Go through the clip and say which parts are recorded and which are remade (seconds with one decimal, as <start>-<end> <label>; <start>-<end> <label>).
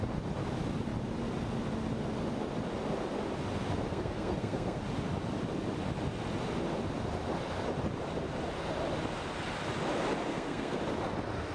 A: 0.0-3.9 recorded; 3.9-4.8 remade; 4.8-10.3 recorded; 10.3-10.8 remade; 10.8-11.5 recorded